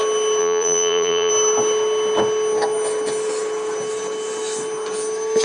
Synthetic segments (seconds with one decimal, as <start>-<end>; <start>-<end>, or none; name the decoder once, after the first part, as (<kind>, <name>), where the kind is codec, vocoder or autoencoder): 0.4-1.3 (vocoder, BigVGAN v2)